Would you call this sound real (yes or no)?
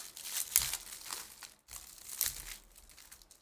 yes